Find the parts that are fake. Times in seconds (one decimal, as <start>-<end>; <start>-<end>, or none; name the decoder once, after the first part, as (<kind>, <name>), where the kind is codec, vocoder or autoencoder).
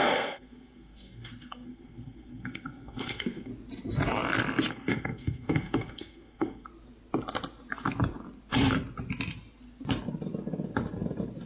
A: 0.0-3.5 (codec, SNAC); 4.7-6.7